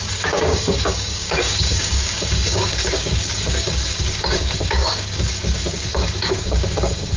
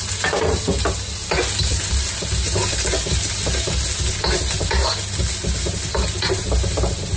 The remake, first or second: first